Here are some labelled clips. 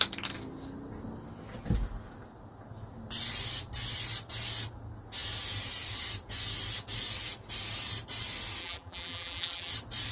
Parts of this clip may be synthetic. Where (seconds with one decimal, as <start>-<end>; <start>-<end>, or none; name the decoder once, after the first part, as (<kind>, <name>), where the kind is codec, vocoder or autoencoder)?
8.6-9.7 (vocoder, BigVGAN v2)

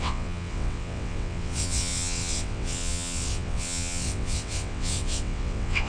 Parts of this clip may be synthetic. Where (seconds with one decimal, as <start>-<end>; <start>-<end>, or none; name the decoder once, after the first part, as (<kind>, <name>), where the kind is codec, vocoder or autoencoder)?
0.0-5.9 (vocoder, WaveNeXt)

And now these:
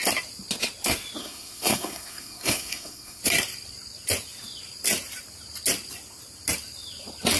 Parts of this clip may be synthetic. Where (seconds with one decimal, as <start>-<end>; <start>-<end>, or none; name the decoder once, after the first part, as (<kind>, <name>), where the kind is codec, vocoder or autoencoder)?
1.2-3.2 (codec, SNAC)